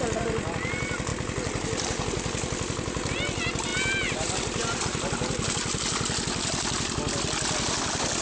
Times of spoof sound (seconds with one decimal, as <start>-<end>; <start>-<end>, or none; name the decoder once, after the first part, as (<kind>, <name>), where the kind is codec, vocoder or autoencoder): none